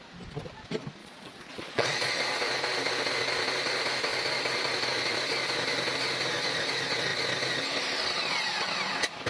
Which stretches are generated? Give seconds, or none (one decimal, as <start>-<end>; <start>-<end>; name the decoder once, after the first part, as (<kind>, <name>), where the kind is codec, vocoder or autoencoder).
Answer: 1.0-2.2 (vocoder, Vocos)